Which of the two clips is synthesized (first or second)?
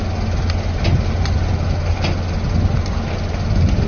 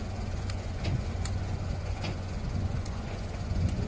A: second